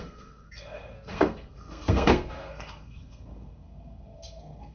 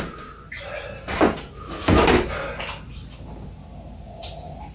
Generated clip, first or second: first